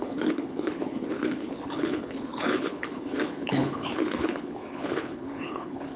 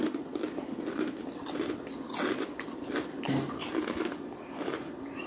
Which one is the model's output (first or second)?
first